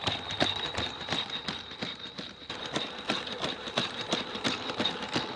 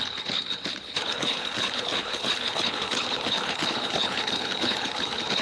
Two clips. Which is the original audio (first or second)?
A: first